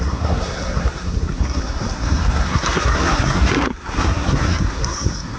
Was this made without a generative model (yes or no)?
no